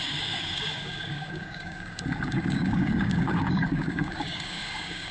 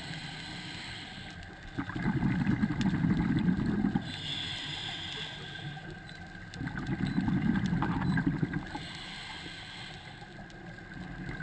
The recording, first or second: second